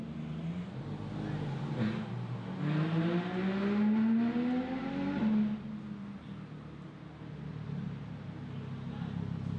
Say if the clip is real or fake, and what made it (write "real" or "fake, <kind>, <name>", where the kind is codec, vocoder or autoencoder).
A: real